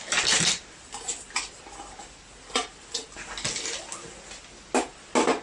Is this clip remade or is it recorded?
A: recorded